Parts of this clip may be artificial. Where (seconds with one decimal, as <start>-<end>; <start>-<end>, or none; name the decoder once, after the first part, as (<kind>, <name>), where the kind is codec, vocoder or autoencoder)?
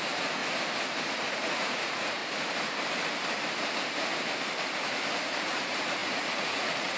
0.0-0.4 (vocoder, Vocos); 1.3-2.2; 5.4-7.0